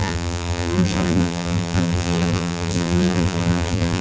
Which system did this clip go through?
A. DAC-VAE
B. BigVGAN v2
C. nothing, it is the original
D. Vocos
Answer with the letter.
B